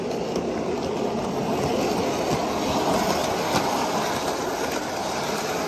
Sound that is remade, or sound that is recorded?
recorded